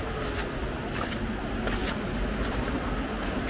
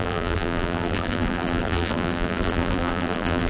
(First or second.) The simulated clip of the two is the second